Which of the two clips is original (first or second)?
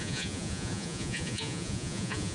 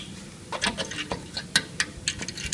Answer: second